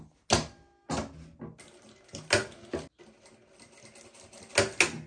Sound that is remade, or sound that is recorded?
recorded